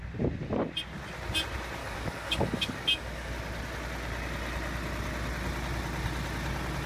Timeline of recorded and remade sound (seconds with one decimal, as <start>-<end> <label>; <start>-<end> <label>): 0.0-1.8 recorded; 1.8-3.3 remade; 3.3-6.9 recorded